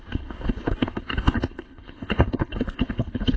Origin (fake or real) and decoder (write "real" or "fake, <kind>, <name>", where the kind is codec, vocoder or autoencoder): fake, codec, HILCodec